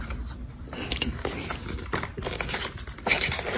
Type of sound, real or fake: real